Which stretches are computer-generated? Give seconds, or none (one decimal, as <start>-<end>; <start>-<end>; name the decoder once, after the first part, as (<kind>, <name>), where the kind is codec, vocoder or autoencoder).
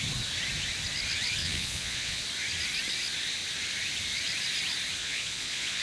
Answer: 1.4-2.2 (vocoder, Vocos); 5.0-5.8